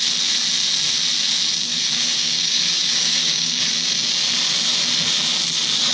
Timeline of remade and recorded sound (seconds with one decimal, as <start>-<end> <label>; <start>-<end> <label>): 0.0-1.7 recorded; 1.7-3.6 remade; 3.6-5.9 recorded